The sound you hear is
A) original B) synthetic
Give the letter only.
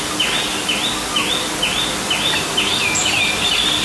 A